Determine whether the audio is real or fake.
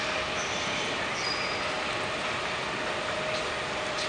real